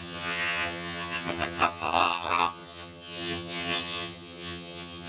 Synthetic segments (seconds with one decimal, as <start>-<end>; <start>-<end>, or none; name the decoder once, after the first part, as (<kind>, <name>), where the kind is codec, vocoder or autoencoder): 0.0-5.1 (vocoder, HiFi-GAN)